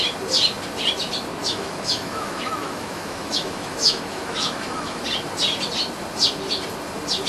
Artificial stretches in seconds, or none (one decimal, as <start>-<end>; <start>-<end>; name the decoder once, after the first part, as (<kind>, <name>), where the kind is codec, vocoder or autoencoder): 1.4-5.0 (autoencoder, DAC-VAE)